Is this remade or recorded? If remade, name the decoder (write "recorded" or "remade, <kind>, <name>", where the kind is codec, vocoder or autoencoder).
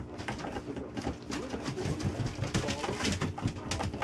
recorded